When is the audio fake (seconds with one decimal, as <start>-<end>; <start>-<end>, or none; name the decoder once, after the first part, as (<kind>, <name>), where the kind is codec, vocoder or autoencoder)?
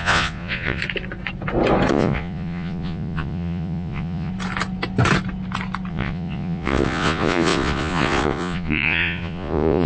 0.0-0.8 (vocoder, Vocos); 1.9-4.3; 5.9-9.9